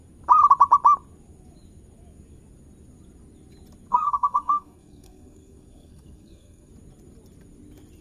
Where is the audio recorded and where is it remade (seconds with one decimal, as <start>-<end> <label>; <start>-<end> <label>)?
0.0-3.9 recorded; 3.9-6.7 remade; 6.7-8.0 recorded